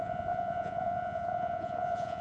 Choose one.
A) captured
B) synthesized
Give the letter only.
B